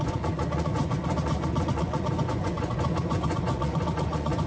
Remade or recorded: remade